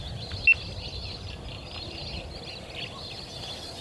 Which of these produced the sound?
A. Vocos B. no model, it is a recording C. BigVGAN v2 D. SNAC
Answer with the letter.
B